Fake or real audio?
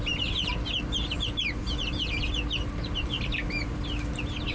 real